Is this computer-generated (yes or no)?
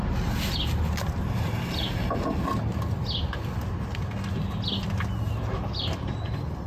no